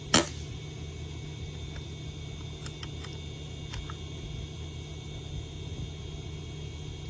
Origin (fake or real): real